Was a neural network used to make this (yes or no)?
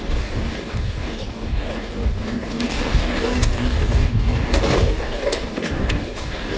yes